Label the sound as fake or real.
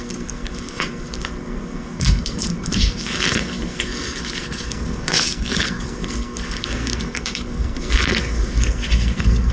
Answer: fake